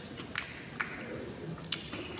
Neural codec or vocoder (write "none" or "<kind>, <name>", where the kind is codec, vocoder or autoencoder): none